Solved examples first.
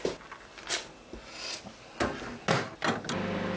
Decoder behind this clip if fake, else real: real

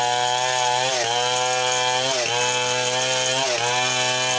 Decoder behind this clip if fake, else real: real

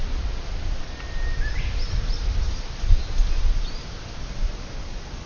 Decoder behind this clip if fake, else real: real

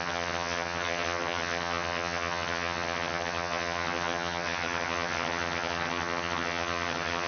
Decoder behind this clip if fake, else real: fake, vocoder, HiFi-GAN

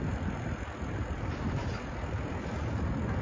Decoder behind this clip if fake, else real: real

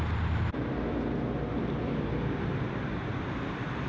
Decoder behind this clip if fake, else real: real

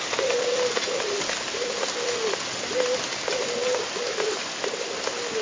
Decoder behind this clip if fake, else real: real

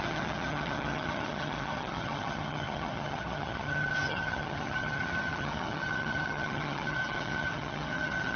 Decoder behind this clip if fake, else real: fake, vocoder, HiFi-GAN